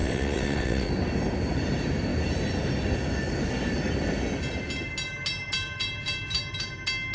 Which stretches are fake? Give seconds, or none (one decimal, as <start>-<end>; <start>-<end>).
0.0-0.9